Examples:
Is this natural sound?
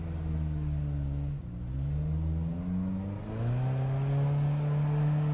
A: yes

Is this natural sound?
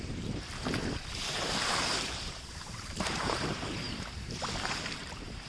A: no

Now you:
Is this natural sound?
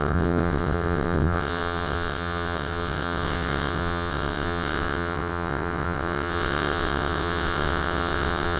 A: no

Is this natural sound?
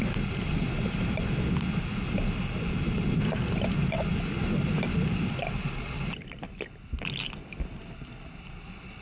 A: yes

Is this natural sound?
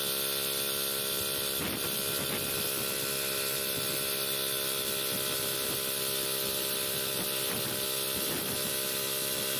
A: yes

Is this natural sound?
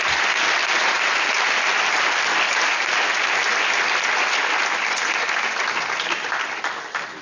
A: yes